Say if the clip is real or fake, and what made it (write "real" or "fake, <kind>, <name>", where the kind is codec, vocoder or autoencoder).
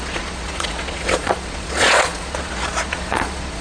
fake, vocoder, Vocos